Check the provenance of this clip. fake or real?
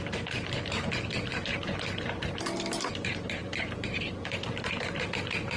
real